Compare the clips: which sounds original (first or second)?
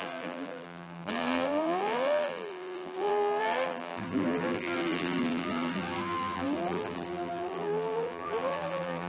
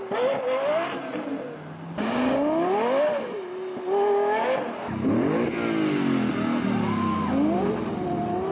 second